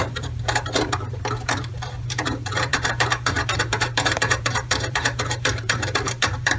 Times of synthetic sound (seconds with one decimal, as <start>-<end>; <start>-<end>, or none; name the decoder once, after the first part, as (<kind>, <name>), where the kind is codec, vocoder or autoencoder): 0.0-6.6 (vocoder, BigVGAN v2)

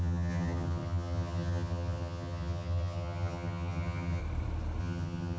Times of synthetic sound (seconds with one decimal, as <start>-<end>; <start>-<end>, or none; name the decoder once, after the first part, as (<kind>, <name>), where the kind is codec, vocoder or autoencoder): 0.0-4.2 (vocoder, HiFi-GAN); 4.8-5.4

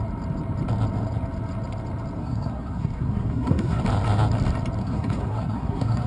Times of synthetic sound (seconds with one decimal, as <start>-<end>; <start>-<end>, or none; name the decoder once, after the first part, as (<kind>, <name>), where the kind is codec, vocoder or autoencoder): 2.2-3.8 (codec, SNAC); 4.8-6.1